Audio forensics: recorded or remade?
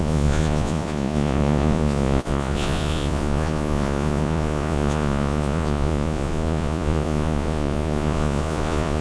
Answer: remade